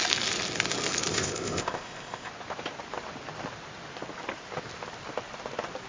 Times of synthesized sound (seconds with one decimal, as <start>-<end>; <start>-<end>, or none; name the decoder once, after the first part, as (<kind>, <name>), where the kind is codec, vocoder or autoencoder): 1.1-2.3 (codec, ZipCodec)